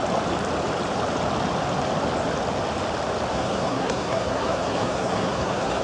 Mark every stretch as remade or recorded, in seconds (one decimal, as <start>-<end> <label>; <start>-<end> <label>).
0.0-3.3 recorded; 3.3-5.8 remade